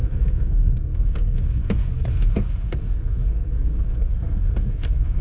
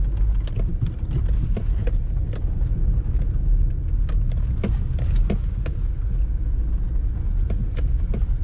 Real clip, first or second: second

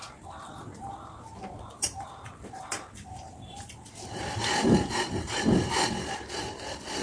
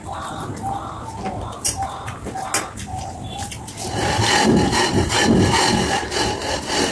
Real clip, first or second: second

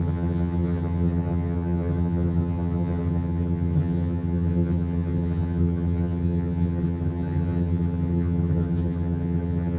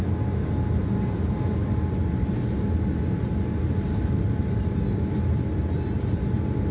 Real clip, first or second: second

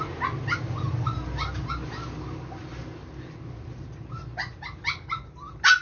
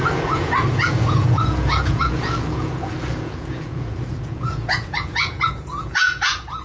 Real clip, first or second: first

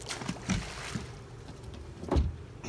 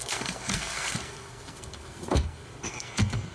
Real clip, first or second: first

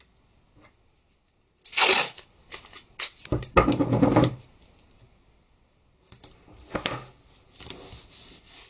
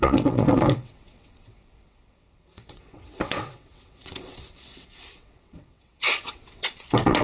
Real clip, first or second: first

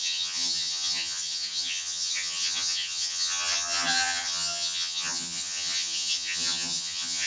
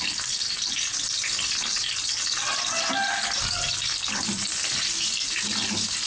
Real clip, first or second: second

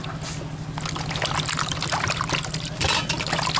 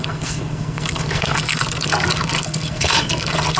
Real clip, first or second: first